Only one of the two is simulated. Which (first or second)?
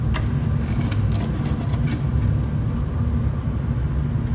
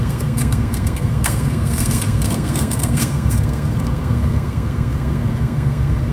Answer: second